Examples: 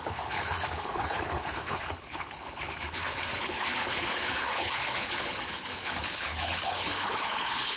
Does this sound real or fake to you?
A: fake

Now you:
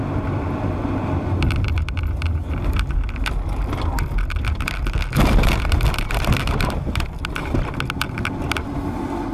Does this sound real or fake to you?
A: real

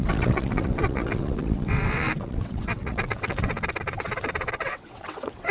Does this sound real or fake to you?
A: fake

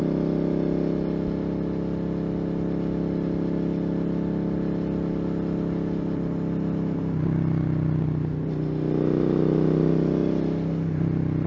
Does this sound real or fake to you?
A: real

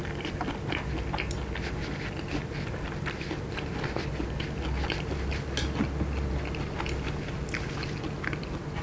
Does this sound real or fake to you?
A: real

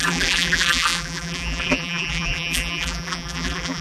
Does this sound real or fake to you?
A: fake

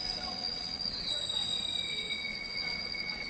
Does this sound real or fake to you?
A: fake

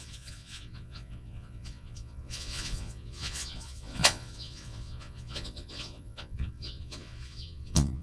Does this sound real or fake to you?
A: fake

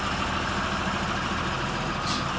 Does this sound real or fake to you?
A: real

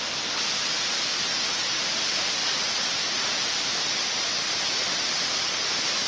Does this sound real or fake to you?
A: real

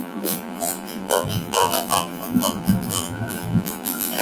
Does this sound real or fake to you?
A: fake